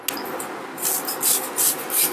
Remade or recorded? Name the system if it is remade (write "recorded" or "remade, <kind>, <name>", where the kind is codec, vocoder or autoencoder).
recorded